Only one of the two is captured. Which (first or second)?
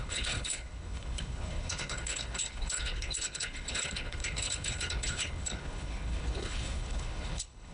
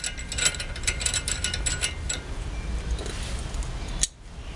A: second